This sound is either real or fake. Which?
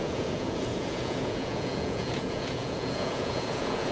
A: fake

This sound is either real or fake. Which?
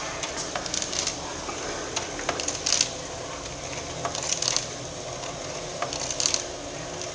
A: real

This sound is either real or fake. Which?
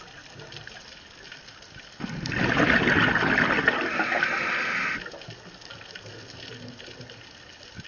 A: real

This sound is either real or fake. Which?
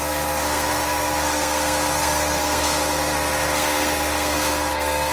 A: fake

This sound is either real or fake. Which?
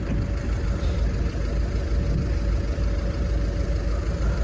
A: real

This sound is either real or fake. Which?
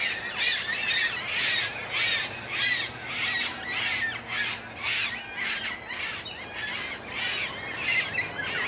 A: real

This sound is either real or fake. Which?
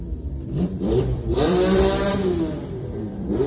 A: fake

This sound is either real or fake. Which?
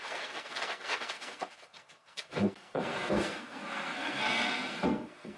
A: fake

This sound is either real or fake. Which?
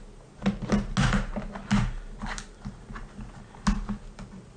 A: real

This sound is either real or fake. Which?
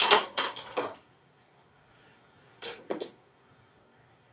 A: fake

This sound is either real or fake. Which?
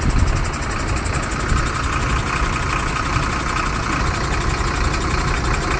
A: real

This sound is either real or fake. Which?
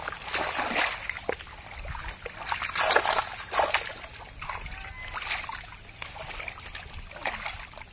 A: real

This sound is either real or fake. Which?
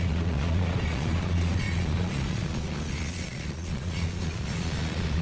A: fake